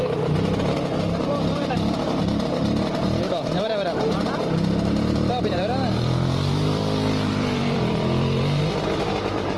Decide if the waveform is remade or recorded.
remade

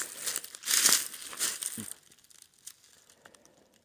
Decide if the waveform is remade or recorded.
recorded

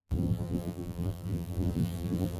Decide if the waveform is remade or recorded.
remade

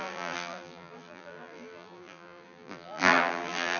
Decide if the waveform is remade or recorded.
remade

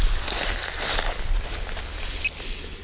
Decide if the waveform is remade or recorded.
recorded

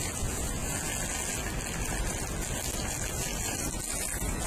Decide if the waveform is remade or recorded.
recorded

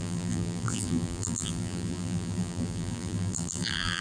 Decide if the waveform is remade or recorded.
remade